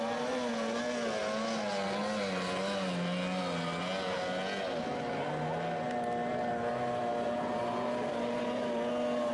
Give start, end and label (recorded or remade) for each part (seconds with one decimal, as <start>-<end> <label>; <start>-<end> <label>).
0.0-9.3 recorded